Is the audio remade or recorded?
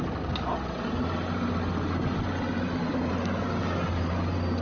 recorded